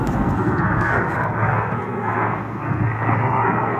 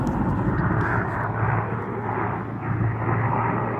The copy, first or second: first